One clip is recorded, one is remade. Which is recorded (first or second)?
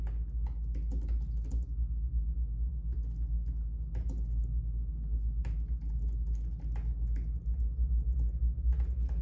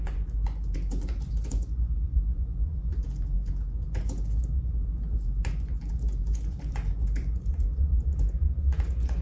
first